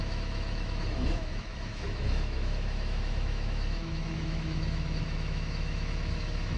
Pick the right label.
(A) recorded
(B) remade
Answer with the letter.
B